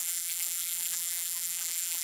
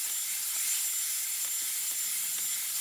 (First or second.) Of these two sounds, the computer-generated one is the first